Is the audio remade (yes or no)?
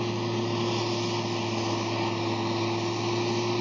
no